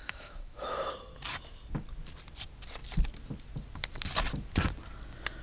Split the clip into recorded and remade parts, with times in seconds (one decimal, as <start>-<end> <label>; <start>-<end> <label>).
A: 0.0-0.9 remade; 0.9-5.4 recorded